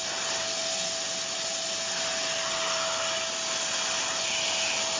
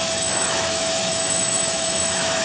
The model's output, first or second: second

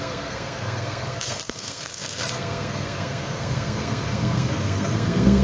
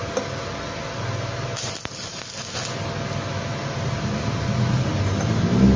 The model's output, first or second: first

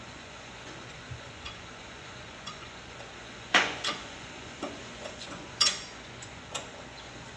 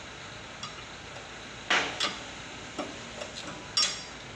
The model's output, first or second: first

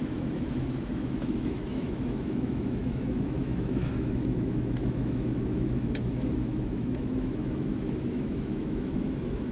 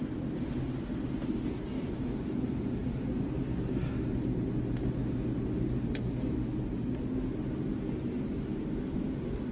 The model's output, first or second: first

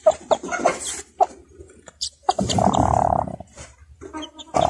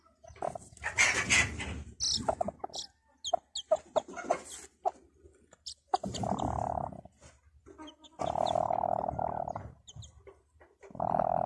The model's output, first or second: first